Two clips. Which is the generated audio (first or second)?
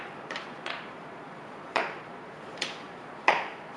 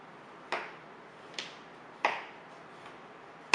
first